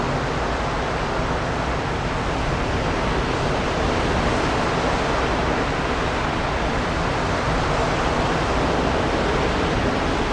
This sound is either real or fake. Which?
real